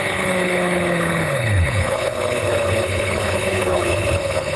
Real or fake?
fake